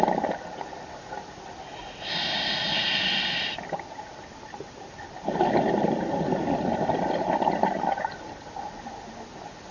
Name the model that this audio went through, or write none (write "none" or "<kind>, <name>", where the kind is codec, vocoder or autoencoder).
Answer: none